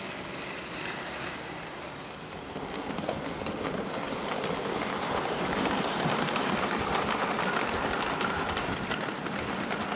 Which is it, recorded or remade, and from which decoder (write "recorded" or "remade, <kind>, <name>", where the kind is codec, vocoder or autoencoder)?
recorded